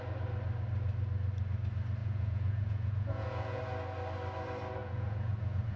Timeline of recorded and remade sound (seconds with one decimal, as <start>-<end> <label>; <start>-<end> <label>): 0.0-2.0 recorded; 2.0-3.6 remade; 3.6-4.8 recorded; 4.8-5.8 remade